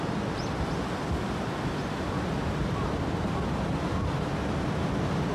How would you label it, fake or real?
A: real